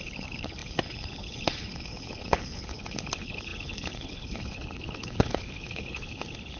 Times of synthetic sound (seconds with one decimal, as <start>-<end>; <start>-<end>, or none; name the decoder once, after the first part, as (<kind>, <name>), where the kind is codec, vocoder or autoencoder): 0.0-6.6 (codec, HILCodec)